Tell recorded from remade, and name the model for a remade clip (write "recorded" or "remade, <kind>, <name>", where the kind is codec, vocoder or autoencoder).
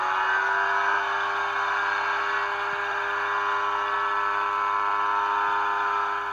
recorded